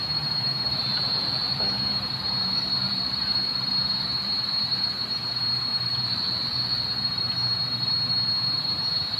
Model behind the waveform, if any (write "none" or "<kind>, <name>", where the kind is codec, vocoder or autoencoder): vocoder, BigVGAN v2